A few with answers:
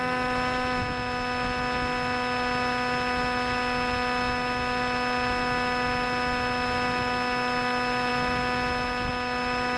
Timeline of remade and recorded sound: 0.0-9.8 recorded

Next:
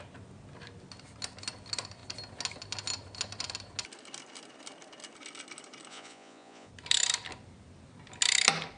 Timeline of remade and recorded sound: 0.0-5.9 recorded; 5.9-6.7 remade; 6.7-8.8 recorded

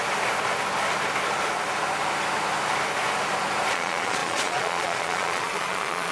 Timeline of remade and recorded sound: 0.0-3.7 recorded; 3.7-6.1 remade

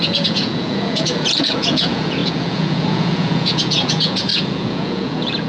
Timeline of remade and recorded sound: 0.0-5.5 remade

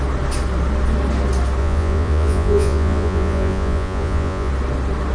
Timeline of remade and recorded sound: 0.0-1.6 recorded; 1.6-4.5 remade; 4.5-5.1 recorded

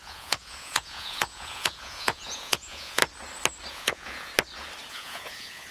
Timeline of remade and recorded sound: 0.0-3.0 remade; 3.0-3.7 recorded; 3.7-4.3 remade; 4.3-4.9 recorded; 4.9-5.7 remade

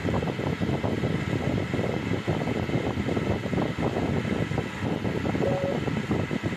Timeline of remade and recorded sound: 0.0-6.6 recorded

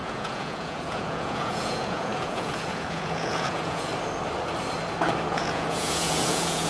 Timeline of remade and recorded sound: 0.0-3.9 remade; 3.9-5.3 recorded; 5.3-6.7 remade